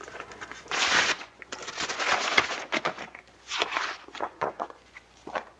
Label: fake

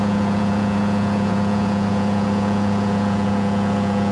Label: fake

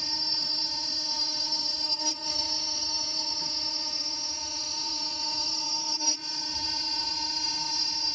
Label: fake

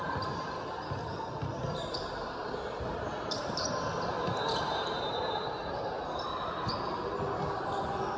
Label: real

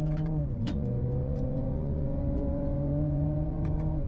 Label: fake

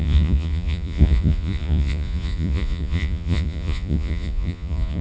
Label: fake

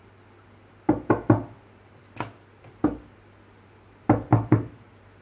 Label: real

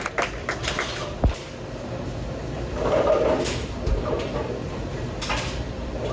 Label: real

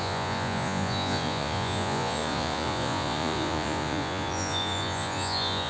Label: fake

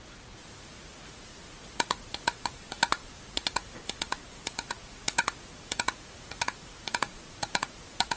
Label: fake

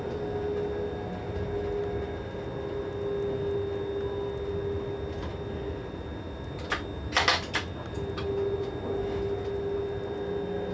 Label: real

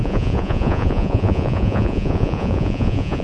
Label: fake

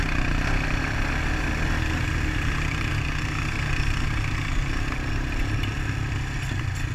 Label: real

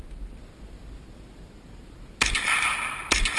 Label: real